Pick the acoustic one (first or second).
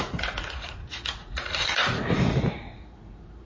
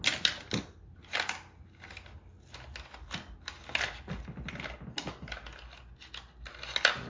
second